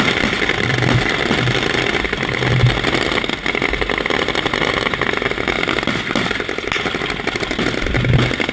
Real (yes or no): yes